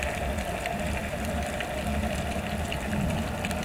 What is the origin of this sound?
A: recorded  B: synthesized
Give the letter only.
B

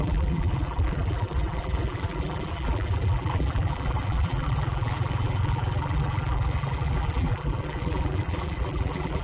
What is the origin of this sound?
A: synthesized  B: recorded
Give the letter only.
A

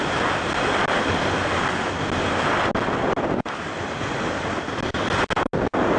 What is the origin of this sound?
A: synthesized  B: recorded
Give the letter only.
B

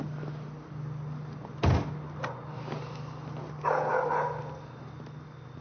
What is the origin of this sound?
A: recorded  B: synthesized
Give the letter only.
A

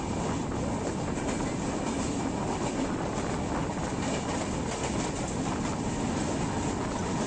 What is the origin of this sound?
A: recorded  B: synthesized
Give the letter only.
A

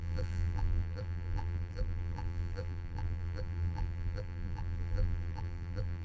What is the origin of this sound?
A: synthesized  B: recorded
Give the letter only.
A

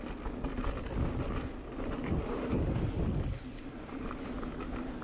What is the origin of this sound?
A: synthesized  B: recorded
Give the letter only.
B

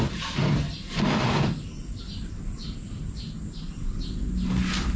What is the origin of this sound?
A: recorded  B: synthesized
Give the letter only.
A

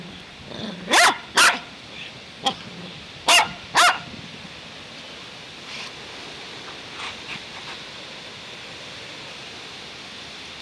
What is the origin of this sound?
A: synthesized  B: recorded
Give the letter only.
B